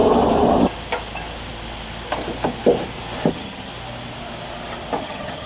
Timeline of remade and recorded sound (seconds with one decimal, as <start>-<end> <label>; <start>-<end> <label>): 0.0-3.3 recorded; 3.3-3.7 remade; 3.7-5.0 recorded; 5.0-5.5 remade

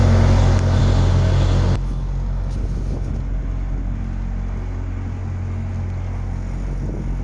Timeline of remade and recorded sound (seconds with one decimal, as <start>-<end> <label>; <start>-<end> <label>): 0.0-7.2 recorded

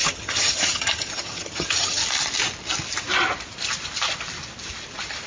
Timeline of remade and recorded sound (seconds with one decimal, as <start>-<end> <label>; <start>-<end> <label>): 0.0-2.0 remade; 2.0-5.3 recorded

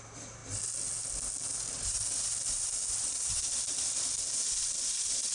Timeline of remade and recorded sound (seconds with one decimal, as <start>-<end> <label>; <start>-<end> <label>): 0.0-5.3 recorded

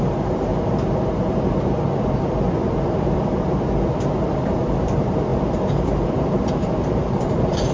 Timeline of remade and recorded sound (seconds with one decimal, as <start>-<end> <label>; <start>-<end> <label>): 0.0-0.5 remade; 0.5-4.2 recorded; 4.2-7.7 remade

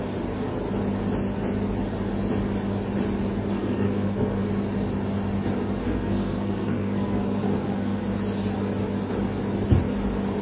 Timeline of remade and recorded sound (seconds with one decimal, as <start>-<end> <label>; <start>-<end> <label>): 0.0-3.5 recorded; 3.5-4.5 remade; 4.5-5.8 recorded; 5.8-8.0 remade; 8.0-10.4 recorded

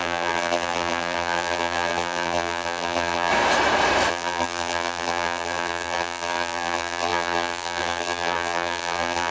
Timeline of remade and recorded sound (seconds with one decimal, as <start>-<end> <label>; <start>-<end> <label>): 0.0-3.3 remade; 3.3-4.1 recorded; 4.1-9.3 remade

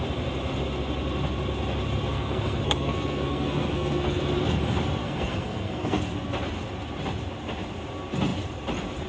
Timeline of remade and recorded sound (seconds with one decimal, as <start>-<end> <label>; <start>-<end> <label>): 0.0-2.1 recorded; 2.1-4.2 remade; 4.2-5.0 recorded; 5.0-6.0 remade; 6.0-9.1 recorded